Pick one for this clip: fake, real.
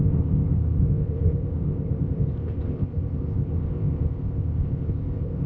fake